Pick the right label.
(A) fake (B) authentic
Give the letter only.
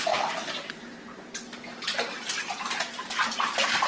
B